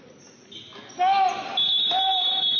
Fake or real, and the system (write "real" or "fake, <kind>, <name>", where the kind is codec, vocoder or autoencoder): real